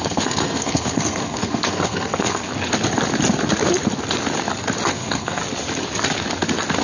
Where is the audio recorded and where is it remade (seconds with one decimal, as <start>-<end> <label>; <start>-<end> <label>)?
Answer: 0.0-2.5 remade; 2.5-4.9 recorded; 4.9-5.4 remade; 5.4-6.8 recorded